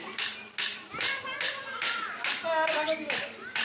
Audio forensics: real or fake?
real